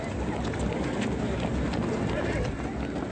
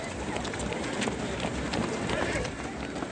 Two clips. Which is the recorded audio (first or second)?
first